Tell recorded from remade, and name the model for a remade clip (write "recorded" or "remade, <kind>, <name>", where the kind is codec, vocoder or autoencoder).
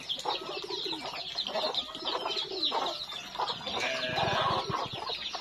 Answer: recorded